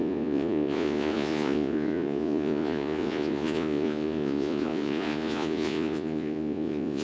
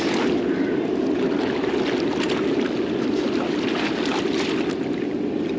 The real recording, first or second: second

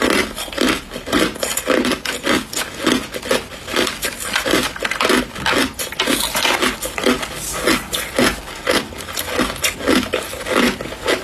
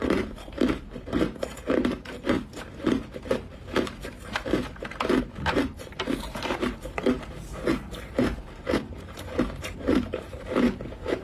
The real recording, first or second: first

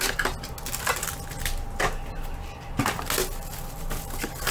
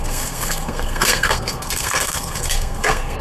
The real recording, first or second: first